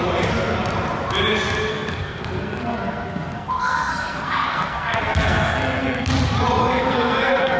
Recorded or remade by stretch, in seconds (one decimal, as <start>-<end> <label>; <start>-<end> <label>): 0.0-1.7 recorded; 1.7-6.1 remade; 6.1-6.6 recorded; 6.6-7.6 remade